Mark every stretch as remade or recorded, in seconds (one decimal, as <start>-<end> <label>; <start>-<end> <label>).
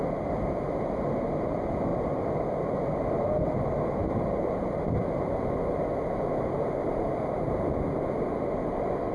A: 0.0-4.0 recorded; 4.0-5.8 remade; 5.8-6.8 recorded; 6.8-7.7 remade; 7.7-9.1 recorded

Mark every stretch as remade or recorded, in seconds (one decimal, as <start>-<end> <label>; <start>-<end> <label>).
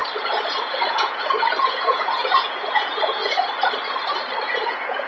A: 0.0-0.9 recorded; 0.9-3.2 remade; 3.2-4.4 recorded; 4.4-5.1 remade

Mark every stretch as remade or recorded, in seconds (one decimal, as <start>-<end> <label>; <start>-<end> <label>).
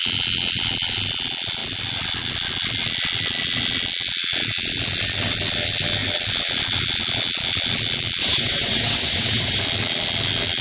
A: 0.0-8.2 recorded; 8.2-9.6 remade; 9.6-10.6 recorded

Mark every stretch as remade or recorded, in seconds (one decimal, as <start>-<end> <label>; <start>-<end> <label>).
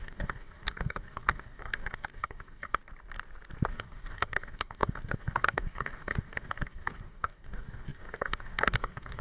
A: 0.0-2.8 remade; 2.8-3.7 recorded; 3.7-9.2 remade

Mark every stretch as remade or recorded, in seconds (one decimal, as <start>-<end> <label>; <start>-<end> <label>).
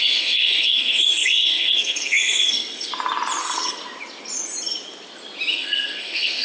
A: 0.0-2.9 remade; 2.9-3.4 recorded; 3.4-3.8 remade; 3.8-5.5 recorded; 5.5-6.4 remade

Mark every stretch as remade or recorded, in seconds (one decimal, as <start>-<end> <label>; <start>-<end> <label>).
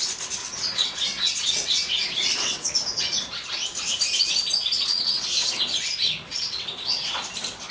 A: 0.0-0.4 recorded; 0.4-2.7 remade; 2.7-4.9 recorded; 4.9-5.5 remade; 5.5-6.3 recorded; 6.3-7.1 remade; 7.1-7.7 recorded